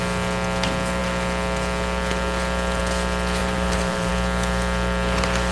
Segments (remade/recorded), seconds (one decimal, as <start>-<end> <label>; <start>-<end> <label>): 0.0-3.4 recorded; 3.4-4.1 remade; 4.1-5.5 recorded

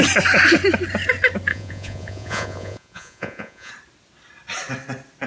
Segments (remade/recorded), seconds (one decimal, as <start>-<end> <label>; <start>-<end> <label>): 0.0-1.5 recorded; 1.5-3.7 remade; 3.7-5.3 recorded

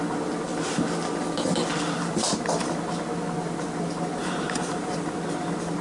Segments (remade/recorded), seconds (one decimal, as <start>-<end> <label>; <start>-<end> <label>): 0.0-4.2 recorded; 4.2-5.1 remade; 5.1-5.8 recorded

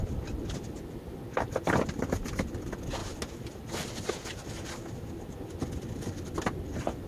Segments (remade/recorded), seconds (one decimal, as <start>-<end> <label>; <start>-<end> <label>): 0.0-3.0 recorded; 3.0-4.1 remade; 4.1-7.1 recorded

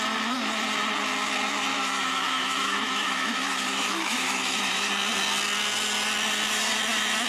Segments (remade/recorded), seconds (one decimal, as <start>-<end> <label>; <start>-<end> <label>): 0.0-1.7 recorded; 1.7-4.9 remade; 4.9-7.3 recorded

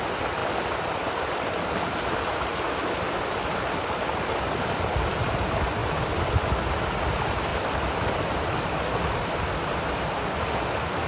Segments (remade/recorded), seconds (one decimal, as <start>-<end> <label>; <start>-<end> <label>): 0.0-11.1 recorded

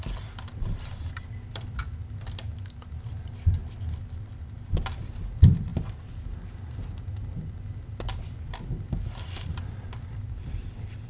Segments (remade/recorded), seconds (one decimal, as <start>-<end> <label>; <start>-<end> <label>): 0.0-1.8 remade; 1.8-2.8 recorded; 2.8-3.6 remade; 3.6-4.3 recorded; 4.3-5.7 remade; 5.7-7.9 recorded; 7.9-11.1 remade